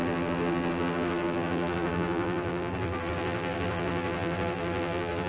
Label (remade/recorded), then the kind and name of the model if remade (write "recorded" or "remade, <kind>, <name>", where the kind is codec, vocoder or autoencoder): remade, vocoder, BigVGAN v2